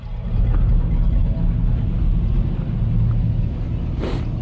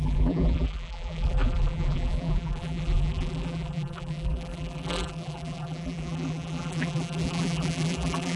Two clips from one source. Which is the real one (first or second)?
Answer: first